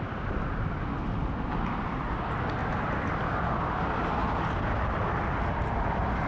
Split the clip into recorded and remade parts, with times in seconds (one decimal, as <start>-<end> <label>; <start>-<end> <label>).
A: 0.0-6.3 recorded

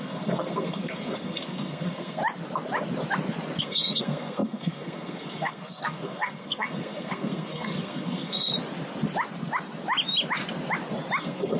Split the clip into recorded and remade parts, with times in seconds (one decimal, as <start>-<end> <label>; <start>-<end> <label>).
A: 0.0-2.2 remade; 2.2-3.6 recorded; 3.6-8.5 remade; 8.5-11.2 recorded; 11.2-11.6 remade

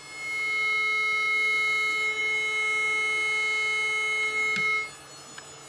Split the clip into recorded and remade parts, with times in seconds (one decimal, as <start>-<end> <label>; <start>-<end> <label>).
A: 0.0-5.7 recorded

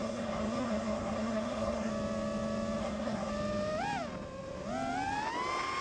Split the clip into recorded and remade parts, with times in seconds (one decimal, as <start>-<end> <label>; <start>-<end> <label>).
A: 0.0-1.9 remade; 1.9-2.8 recorded; 2.8-3.3 remade; 3.3-5.8 recorded

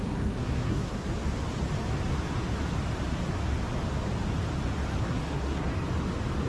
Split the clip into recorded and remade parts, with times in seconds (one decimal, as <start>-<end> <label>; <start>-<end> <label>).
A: 0.0-1.1 remade; 1.1-5.0 recorded; 5.0-5.7 remade; 5.7-6.5 recorded

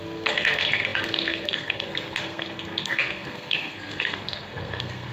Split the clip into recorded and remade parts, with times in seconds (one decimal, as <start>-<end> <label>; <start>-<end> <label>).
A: 0.0-5.1 remade

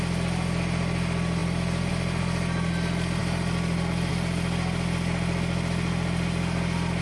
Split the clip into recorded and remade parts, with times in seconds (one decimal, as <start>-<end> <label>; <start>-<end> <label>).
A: 0.0-7.0 recorded